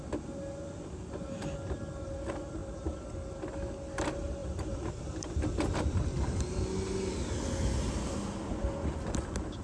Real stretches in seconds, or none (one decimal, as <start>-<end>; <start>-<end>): 0.0-4.4; 6.4-9.6

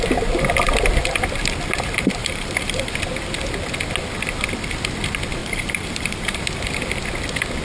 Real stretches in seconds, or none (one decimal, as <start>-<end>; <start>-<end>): 0.0-2.2; 2.9-5.4; 6.4-7.6

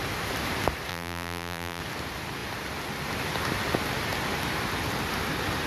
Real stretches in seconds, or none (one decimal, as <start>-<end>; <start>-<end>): 0.0-0.9; 1.8-5.7

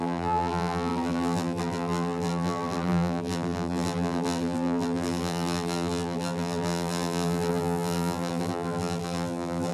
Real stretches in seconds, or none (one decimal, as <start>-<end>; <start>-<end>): none

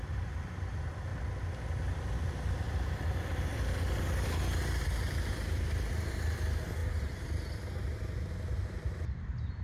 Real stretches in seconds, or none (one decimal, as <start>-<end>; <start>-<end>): 1.1-1.8

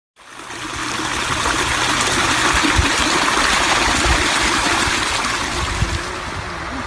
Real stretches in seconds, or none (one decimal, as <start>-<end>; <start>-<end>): 0.0-0.8; 4.9-6.9

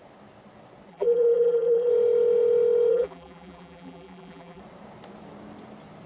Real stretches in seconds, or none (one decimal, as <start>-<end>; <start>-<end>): 0.0-0.9; 1.9-2.9; 4.6-6.1